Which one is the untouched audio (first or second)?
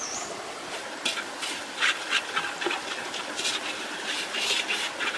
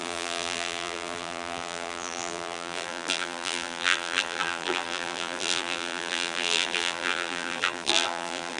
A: first